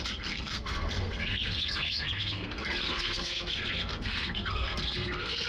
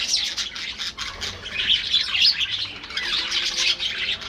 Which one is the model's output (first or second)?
first